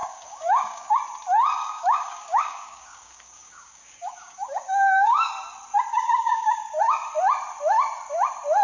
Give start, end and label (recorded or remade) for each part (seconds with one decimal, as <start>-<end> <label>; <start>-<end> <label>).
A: 0.0-0.9 remade; 0.9-1.6 recorded; 1.6-5.3 remade; 5.3-5.9 recorded; 5.9-6.8 remade; 6.8-8.6 recorded